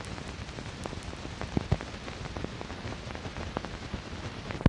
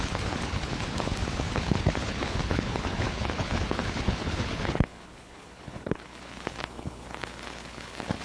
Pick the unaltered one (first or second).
first